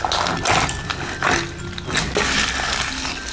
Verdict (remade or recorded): recorded